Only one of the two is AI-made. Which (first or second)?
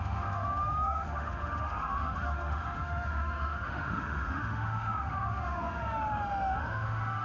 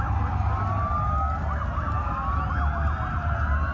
first